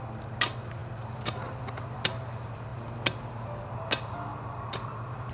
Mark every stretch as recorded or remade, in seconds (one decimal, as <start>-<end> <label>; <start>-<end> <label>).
0.0-5.3 recorded